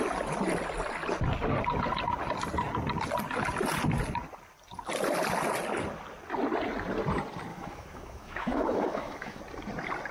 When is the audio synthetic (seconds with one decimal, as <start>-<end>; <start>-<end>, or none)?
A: 7.5-9.4